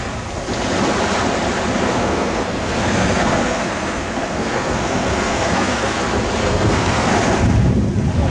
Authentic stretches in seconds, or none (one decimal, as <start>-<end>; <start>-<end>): 0.0-1.9; 6.0-6.4; 7.1-8.3